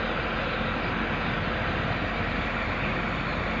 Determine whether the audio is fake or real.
real